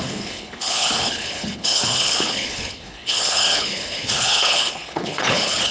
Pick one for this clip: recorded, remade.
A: remade